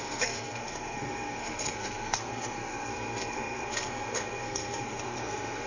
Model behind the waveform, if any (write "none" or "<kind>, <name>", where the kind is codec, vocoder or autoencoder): codec, SNAC